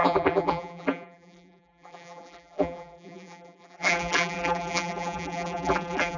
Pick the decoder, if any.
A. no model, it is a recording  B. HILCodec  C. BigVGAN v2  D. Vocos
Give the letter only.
C